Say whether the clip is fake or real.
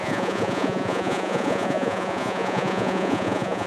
fake